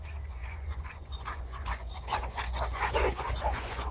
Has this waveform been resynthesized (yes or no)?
yes